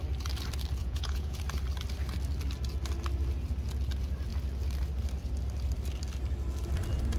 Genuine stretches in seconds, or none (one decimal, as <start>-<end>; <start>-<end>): 0.0-0.8; 1.4-7.2